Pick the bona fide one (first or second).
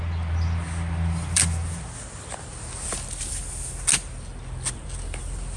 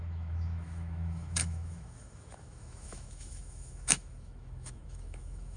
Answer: first